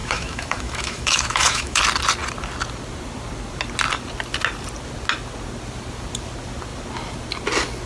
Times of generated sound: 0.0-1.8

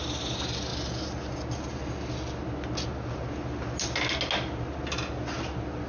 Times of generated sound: none

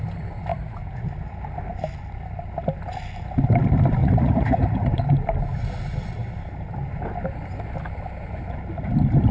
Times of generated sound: 0.5-1.1; 4.0-5.0

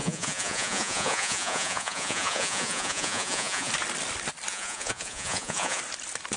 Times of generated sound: 0.0-3.7; 4.5-5.8

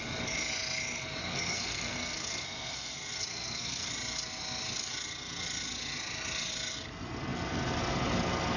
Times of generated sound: 1.2-2.9; 3.3-3.9

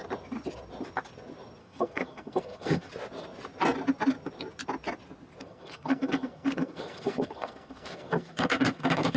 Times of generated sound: 1.6-2.9; 5.4-9.2

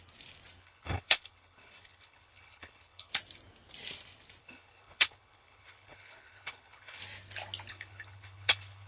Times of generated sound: 0.6-3.1; 4.4-7.0; 7.7-8.9

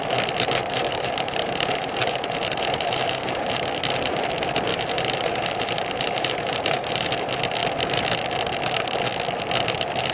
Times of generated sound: 0.6-3.5; 4.7-7.1